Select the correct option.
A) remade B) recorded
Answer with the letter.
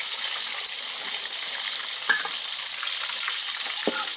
B